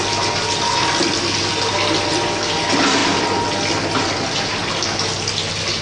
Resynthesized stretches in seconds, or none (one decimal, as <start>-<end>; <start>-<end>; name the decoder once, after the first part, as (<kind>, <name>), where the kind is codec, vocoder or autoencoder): none

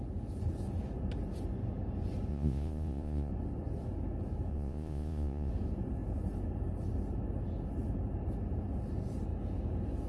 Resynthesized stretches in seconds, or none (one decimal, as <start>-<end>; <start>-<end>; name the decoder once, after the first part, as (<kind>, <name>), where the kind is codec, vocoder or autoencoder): 2.3-3.3 (vocoder, Vocos); 4.5-5.5